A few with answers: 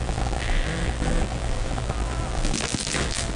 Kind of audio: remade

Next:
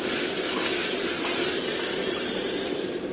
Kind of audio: recorded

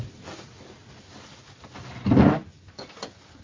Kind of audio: recorded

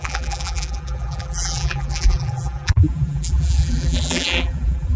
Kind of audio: remade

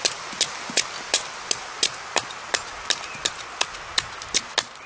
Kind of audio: recorded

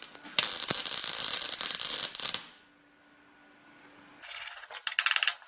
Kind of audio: recorded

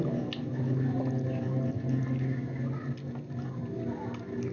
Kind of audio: recorded